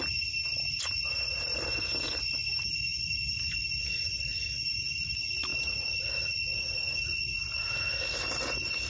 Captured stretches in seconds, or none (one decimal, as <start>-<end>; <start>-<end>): 0.0-8.9